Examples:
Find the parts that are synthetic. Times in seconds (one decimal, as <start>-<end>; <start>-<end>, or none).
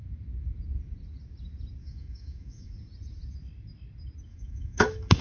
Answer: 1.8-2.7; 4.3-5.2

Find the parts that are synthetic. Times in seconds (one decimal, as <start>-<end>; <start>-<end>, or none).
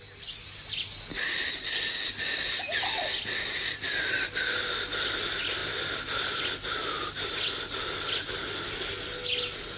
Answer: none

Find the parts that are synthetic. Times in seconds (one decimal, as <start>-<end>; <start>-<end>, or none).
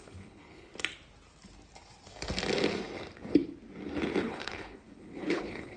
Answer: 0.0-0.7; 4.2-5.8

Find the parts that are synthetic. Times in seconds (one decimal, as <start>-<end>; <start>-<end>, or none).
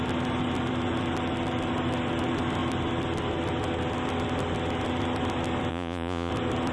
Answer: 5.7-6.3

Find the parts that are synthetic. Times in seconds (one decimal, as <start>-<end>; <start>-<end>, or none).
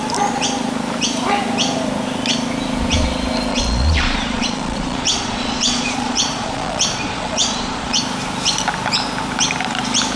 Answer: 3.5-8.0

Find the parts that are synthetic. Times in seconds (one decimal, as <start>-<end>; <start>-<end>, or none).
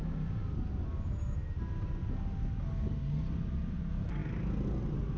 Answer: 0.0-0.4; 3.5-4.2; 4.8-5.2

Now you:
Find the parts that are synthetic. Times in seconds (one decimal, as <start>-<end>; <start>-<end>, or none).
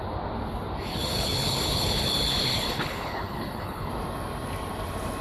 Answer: 0.9-3.9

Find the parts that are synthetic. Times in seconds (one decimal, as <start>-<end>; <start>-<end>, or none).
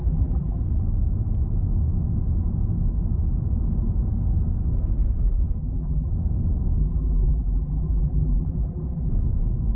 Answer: 0.0-0.6; 5.6-6.1; 6.8-9.1